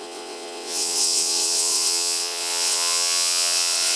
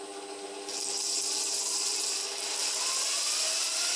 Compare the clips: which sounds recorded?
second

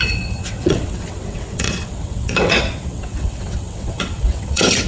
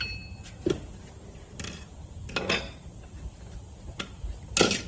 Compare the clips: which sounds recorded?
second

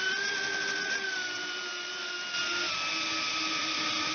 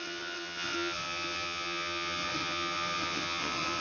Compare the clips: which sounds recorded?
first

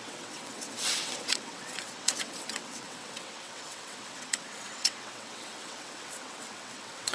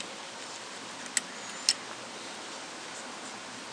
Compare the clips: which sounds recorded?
second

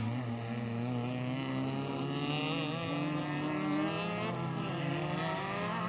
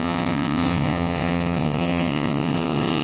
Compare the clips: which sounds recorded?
first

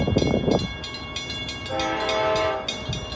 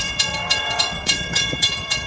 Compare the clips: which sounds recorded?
first